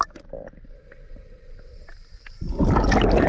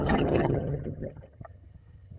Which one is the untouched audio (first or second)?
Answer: first